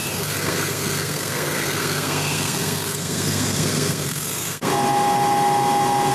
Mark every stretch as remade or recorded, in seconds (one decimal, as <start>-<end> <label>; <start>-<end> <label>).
0.0-4.7 remade; 4.7-6.1 recorded